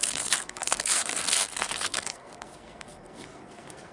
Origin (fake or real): fake